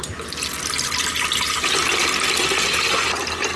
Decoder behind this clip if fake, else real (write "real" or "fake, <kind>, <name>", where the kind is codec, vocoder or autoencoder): real